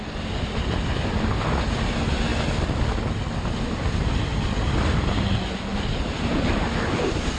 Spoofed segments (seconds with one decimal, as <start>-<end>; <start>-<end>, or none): none